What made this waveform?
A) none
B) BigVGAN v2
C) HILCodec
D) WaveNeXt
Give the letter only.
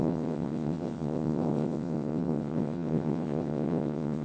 D